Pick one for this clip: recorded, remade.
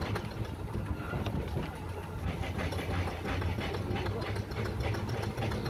recorded